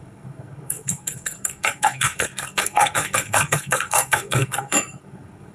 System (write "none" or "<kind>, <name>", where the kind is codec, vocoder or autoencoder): codec, SNAC